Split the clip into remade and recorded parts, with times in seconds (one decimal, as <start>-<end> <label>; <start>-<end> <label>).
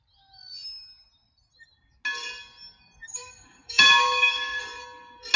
0.0-3.1 recorded; 3.1-4.6 remade; 4.6-5.4 recorded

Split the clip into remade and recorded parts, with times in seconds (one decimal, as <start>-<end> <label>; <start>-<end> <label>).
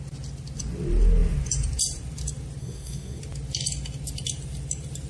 0.0-2.6 recorded; 2.6-3.2 remade; 3.2-5.1 recorded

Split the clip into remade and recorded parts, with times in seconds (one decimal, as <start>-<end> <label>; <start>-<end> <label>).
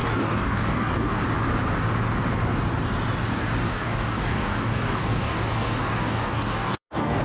0.0-1.2 remade; 1.2-3.7 recorded; 3.7-7.2 remade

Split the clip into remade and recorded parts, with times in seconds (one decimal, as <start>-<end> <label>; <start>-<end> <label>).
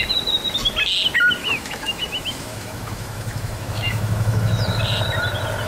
0.0-1.4 recorded; 1.4-4.8 remade; 4.8-5.7 recorded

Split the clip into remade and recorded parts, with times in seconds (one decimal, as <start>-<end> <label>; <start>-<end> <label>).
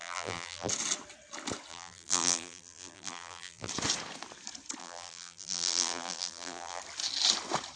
0.0-0.7 remade; 0.7-1.7 recorded; 1.7-3.7 remade; 3.7-4.8 recorded; 4.8-6.8 remade; 6.8-7.8 recorded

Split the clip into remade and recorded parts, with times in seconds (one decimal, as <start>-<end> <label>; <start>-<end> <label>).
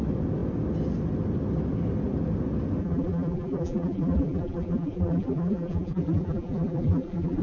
0.0-2.8 recorded; 2.8-7.4 remade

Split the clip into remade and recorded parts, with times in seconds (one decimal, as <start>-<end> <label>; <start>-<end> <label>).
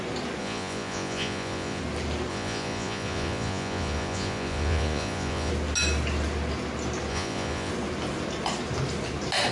0.0-0.4 recorded; 0.4-1.8 remade; 1.8-2.3 recorded; 2.3-5.5 remade; 5.5-7.1 recorded; 7.1-7.7 remade; 7.7-9.5 recorded